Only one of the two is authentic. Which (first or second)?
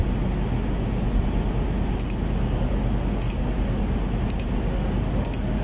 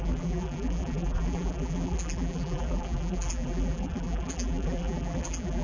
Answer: first